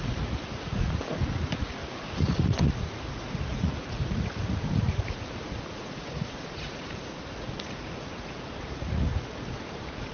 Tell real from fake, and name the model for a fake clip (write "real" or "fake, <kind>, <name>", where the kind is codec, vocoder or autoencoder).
fake, vocoder, Vocos